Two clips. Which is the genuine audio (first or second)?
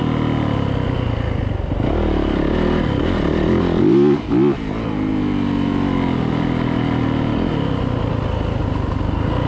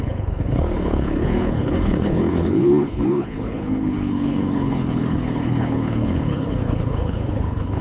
first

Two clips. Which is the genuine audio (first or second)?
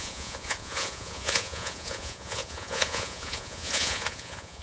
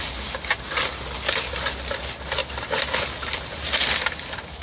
second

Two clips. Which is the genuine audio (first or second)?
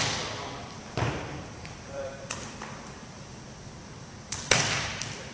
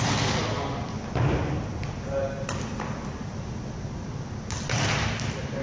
second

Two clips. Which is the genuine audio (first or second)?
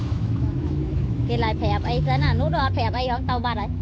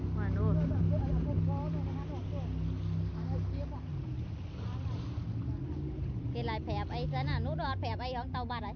second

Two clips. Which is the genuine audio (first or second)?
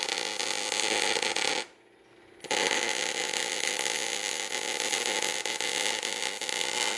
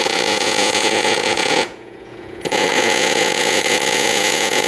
first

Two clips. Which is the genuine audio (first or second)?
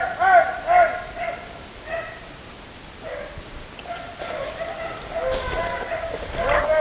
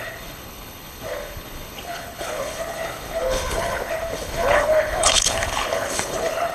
first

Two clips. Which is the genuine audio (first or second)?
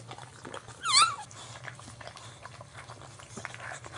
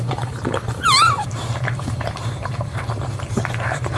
first